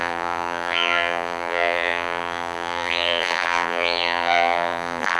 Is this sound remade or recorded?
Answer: remade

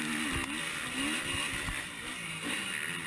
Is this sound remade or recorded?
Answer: recorded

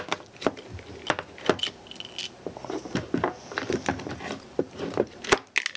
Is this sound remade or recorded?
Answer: recorded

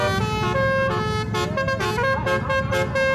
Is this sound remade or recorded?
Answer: recorded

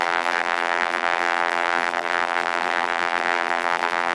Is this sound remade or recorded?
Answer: remade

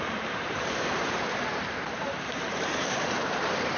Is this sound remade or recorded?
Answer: remade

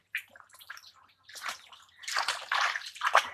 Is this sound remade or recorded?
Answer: remade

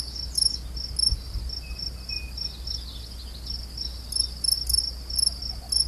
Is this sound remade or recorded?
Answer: recorded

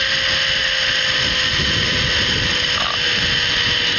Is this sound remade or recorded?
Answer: recorded